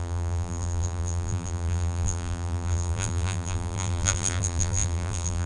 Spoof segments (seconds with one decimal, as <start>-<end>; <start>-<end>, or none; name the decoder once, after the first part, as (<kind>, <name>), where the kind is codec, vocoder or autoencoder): 0.0-5.5 (vocoder, BigVGAN v2)